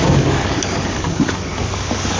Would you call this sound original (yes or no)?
no